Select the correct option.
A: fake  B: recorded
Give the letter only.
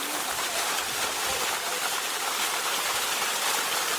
B